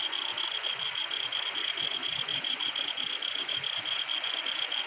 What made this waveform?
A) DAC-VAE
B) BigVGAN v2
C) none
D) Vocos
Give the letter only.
D